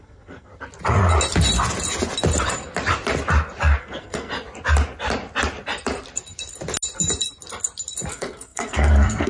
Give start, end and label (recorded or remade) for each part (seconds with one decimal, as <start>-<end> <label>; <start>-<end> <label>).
0.0-0.5 remade; 0.5-3.8 recorded; 3.8-4.3 remade; 4.3-8.1 recorded; 8.1-9.3 remade